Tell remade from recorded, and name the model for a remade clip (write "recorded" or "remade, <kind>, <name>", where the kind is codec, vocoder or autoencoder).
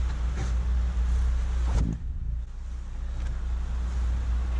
recorded